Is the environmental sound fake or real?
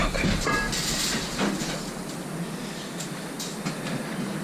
real